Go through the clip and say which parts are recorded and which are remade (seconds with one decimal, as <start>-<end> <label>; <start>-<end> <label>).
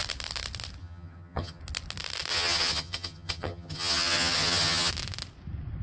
0.0-0.8 recorded; 0.8-1.6 remade; 1.6-2.3 recorded; 2.3-4.9 remade; 4.9-5.8 recorded